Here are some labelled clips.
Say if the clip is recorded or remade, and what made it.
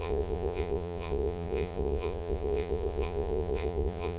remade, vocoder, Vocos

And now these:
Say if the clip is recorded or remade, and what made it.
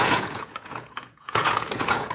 remade, vocoder, Vocos